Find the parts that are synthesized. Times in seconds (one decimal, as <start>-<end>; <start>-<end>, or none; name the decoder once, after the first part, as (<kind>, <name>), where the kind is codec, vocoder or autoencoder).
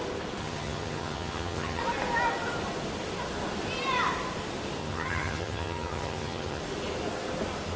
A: 0.4-1.8 (vocoder, HiFi-GAN); 4.8-6.6